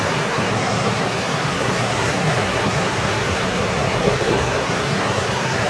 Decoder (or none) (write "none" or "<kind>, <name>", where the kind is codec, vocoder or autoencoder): codec, SNAC